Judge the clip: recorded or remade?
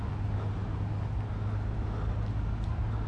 recorded